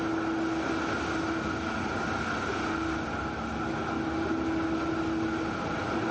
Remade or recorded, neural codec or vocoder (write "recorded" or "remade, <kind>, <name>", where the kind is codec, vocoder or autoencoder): recorded